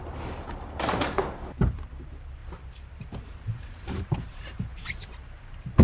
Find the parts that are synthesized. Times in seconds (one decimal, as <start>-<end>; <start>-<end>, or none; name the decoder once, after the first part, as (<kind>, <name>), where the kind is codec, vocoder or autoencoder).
0.0-2.4 (vocoder, BigVGAN v2); 3.2-5.8